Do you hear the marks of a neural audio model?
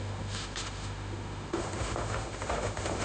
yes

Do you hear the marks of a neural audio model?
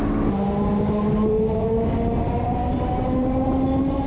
no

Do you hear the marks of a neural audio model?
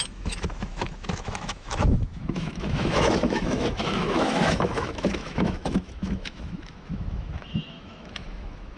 yes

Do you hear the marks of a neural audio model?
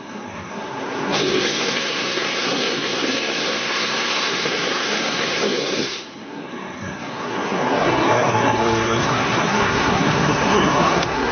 yes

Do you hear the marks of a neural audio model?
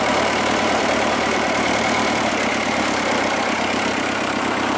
yes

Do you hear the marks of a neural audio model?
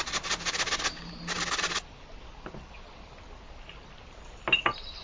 no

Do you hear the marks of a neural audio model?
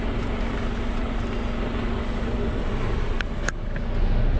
no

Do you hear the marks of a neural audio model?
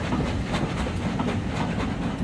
no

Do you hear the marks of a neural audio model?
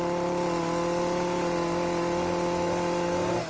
no